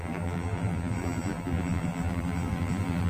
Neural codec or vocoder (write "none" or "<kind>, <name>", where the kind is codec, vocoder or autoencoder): vocoder, BigVGAN v2